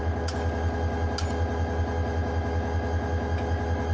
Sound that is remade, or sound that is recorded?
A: recorded